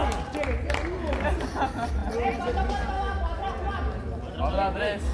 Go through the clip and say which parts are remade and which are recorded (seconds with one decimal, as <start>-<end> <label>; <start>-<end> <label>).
0.0-5.1 recorded